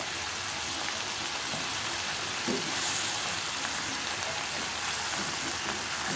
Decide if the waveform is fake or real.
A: real